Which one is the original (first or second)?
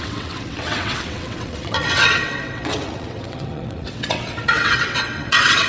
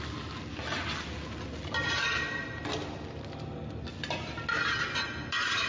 second